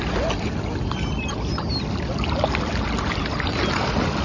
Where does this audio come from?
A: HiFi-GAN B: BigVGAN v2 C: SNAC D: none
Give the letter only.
D